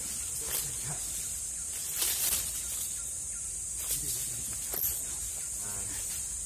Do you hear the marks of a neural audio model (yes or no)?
no